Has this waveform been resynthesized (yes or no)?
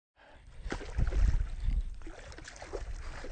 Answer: no